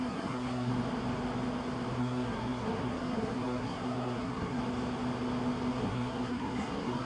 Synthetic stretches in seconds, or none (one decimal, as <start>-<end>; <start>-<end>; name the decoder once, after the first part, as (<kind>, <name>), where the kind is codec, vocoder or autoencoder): 0.0-0.7 (codec, SNAC); 2.0-4.6; 5.7-7.0